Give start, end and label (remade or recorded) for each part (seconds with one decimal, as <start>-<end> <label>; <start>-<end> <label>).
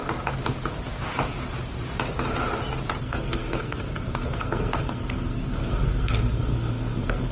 0.0-3.0 recorded; 3.0-7.3 remade